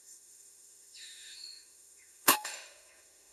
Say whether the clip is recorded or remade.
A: remade